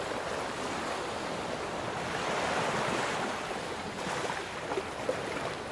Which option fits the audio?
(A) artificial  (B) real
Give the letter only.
B